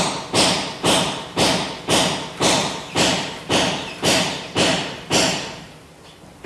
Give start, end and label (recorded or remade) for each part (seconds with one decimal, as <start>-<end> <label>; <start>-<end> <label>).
0.0-6.5 recorded